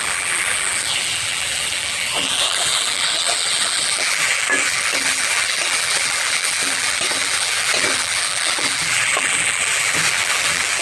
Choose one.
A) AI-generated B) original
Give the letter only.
A